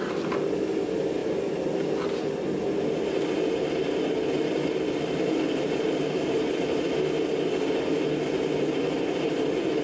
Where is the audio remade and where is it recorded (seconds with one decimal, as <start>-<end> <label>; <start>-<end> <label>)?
0.0-9.8 recorded